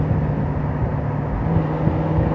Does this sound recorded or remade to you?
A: recorded